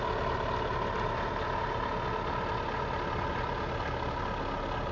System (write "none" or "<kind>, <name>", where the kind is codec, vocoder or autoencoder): none